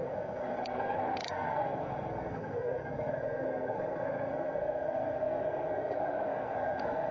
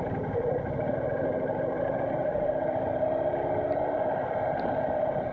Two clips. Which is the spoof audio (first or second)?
first